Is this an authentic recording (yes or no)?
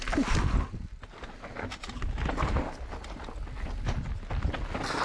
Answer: yes